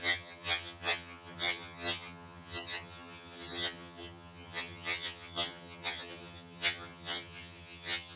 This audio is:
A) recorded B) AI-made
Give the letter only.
B